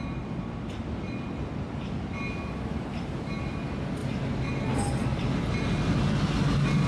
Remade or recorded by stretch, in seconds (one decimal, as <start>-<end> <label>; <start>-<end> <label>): 0.0-6.9 recorded